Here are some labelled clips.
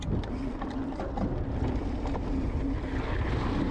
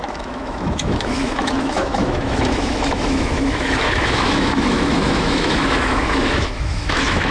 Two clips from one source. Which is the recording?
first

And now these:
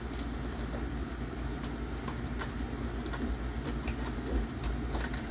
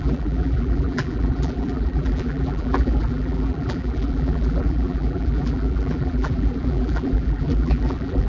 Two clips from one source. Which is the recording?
first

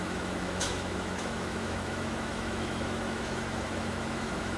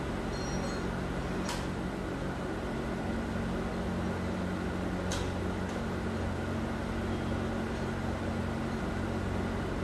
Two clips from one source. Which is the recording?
second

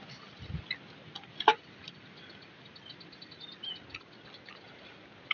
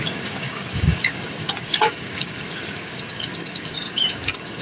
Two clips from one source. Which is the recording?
first